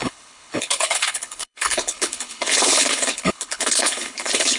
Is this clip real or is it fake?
fake